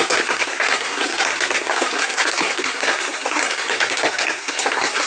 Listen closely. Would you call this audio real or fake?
fake